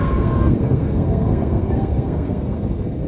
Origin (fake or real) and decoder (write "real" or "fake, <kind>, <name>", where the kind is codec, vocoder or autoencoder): fake, codec, SNAC